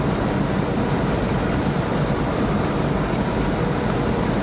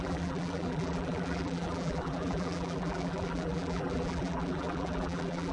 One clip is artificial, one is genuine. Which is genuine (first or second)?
first